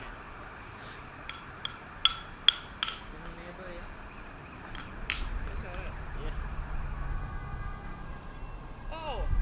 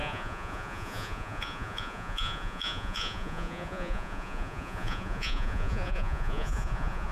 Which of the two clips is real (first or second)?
first